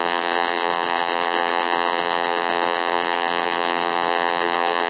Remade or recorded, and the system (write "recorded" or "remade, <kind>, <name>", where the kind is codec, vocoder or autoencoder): remade, vocoder, BigVGAN v2